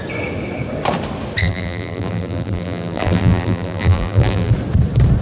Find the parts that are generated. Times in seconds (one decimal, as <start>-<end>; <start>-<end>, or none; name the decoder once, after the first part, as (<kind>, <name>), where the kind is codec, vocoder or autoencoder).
1.4-4.5 (vocoder, BigVGAN v2)